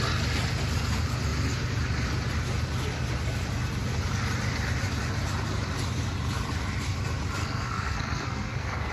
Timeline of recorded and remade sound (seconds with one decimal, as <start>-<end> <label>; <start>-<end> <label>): 0.0-7.4 recorded; 7.4-8.9 remade